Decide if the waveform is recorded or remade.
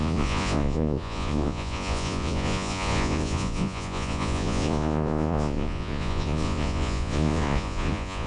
remade